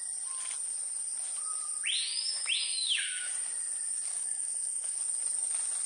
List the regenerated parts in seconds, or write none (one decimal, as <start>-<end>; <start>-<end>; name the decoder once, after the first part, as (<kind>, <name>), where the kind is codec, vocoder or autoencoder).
2.0-3.3 (autoencoder, DAC-VAE); 4.1-5.0